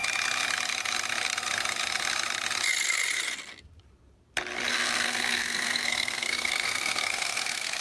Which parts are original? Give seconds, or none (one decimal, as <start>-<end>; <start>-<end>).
0.0-4.7